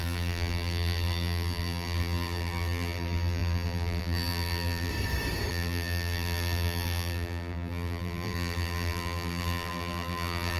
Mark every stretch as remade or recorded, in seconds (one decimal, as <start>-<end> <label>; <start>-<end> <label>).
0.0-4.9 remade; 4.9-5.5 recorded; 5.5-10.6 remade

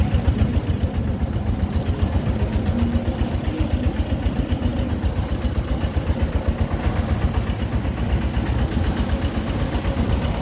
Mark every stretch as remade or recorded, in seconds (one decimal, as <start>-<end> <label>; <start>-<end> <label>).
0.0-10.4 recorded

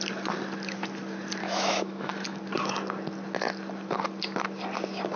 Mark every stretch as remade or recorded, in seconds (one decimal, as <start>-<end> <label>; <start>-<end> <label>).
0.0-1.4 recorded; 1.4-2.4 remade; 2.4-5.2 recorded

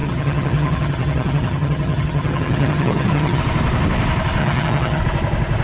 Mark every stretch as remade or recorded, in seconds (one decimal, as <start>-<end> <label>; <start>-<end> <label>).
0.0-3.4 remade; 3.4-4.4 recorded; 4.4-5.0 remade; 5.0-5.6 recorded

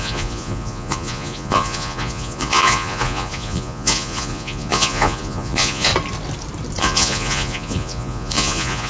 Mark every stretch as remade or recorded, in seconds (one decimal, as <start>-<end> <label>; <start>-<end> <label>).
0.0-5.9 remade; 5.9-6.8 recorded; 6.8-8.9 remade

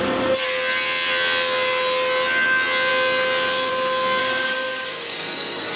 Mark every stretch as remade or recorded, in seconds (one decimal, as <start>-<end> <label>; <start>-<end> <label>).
0.0-4.2 recorded; 4.2-5.8 remade

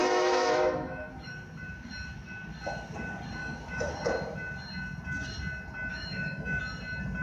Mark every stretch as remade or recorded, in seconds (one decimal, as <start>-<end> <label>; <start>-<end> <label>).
0.0-1.3 remade; 1.3-3.4 recorded; 3.4-3.9 remade; 3.9-5.9 recorded; 5.9-6.6 remade; 6.6-7.2 recorded

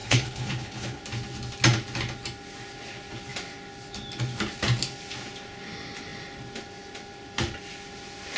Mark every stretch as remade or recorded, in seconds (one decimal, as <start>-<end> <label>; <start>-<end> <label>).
0.0-1.0 remade; 1.0-8.4 recorded